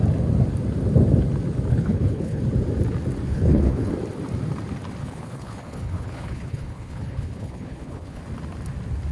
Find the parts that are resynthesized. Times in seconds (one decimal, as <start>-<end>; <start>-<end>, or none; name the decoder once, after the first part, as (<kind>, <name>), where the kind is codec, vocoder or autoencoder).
1.7-2.4 (codec, HILCodec); 3.3-3.9; 5.0-8.2

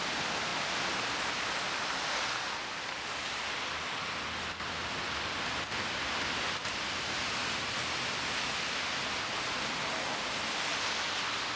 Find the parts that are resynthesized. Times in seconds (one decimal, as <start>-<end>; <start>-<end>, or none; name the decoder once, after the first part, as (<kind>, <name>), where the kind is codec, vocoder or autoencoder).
none

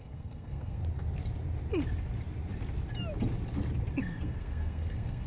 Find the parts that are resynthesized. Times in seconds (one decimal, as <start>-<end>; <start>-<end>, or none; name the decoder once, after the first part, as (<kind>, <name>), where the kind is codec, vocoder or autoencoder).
0.0-0.8 (codec, SNAC); 4.0-5.3

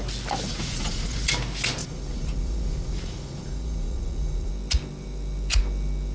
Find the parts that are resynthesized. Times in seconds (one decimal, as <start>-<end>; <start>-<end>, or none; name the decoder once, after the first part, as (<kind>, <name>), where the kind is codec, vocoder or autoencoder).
0.5-1.3 (vocoder, Vocos); 1.8-4.5